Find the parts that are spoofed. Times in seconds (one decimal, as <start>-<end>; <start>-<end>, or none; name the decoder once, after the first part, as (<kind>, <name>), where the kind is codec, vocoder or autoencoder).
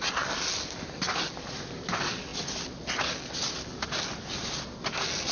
none